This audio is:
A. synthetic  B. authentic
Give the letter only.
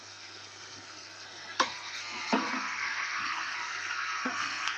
A